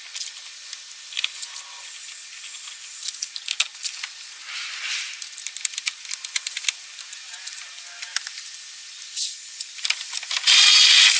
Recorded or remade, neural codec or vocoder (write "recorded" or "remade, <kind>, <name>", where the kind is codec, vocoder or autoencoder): recorded